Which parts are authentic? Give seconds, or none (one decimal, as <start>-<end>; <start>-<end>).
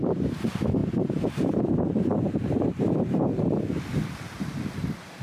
none